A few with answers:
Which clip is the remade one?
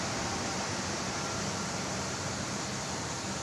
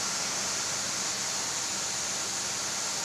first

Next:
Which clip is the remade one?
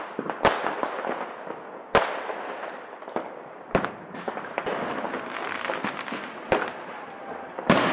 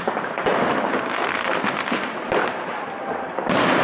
second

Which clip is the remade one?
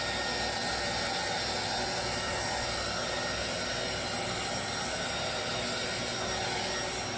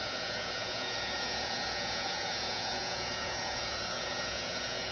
second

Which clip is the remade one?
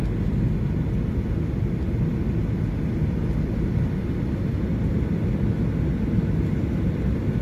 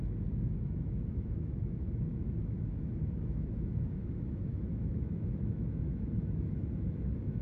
second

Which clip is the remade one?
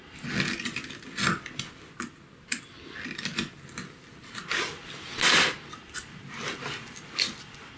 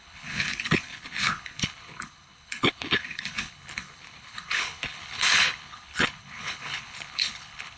second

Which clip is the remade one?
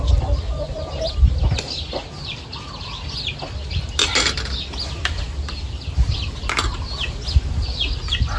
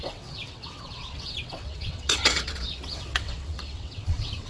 second